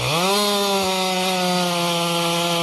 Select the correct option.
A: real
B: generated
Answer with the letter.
A